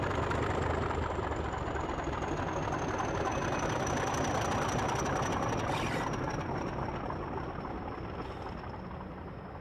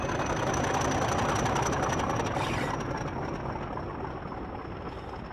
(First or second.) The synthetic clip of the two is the first